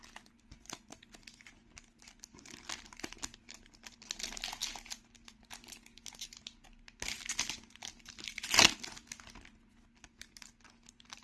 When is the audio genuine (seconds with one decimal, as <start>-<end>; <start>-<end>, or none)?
0.0-11.2